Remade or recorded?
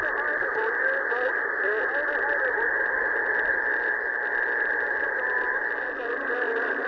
recorded